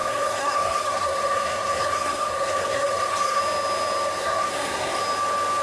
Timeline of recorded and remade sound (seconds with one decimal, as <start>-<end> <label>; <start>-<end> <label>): 0.0-3.4 remade; 3.4-4.2 recorded; 4.2-5.0 remade; 5.0-5.6 recorded